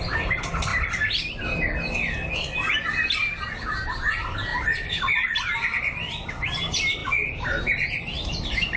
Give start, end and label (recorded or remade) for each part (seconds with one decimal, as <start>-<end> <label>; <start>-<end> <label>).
0.0-4.5 recorded; 4.5-5.0 remade; 5.0-7.0 recorded; 7.0-8.8 remade